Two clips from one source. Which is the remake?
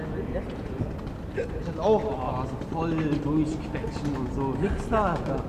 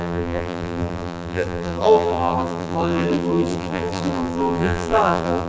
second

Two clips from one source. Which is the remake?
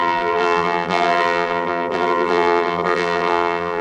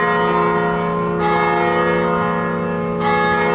first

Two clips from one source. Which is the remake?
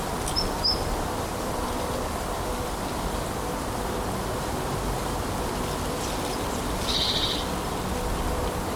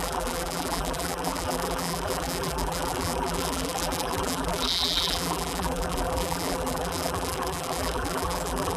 second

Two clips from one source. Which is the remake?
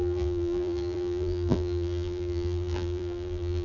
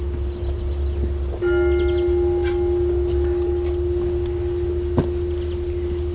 first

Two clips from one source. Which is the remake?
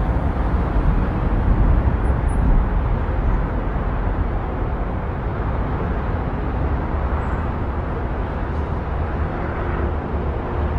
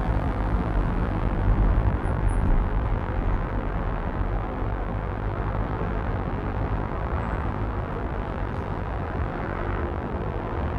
second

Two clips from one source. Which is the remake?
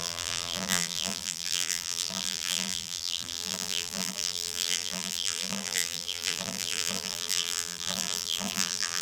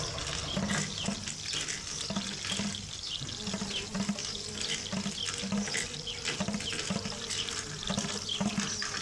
first